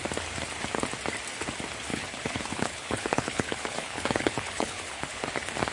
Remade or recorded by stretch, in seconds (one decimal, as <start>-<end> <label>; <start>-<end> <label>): 0.0-1.9 recorded; 1.9-5.3 remade; 5.3-5.7 recorded